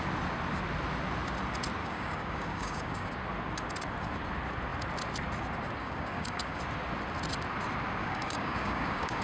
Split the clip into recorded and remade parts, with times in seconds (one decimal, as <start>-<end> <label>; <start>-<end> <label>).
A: 0.0-1.8 recorded; 1.8-3.1 remade; 3.1-5.8 recorded; 5.8-6.6 remade; 6.6-8.0 recorded; 8.0-9.2 remade